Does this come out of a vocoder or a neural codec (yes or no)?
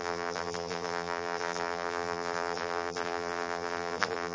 yes